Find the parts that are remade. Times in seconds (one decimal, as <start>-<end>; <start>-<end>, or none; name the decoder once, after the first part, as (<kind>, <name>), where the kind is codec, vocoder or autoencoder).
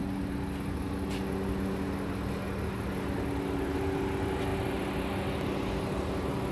none